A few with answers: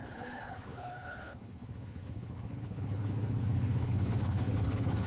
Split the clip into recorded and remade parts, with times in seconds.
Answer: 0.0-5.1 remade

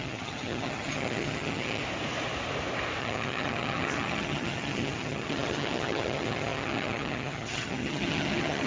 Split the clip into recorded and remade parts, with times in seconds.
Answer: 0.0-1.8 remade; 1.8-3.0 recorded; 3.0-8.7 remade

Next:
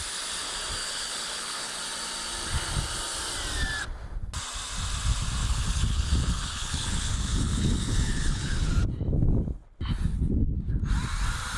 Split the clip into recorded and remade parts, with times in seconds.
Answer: 0.0-0.8 recorded; 0.8-1.8 remade; 1.8-5.4 recorded; 5.4-8.7 remade; 8.7-10.1 recorded; 10.1-10.7 remade; 10.7-11.6 recorded